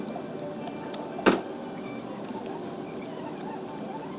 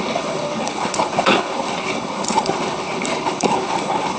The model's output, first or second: second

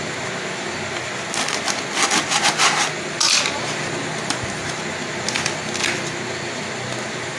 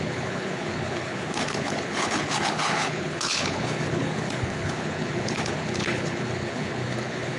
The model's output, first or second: second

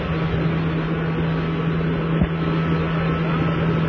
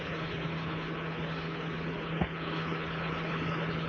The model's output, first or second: second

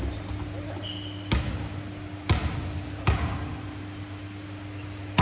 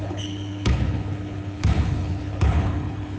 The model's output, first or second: second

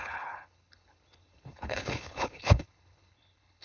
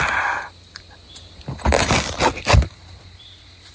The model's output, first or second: first